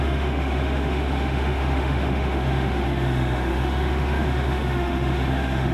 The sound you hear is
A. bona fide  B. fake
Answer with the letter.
B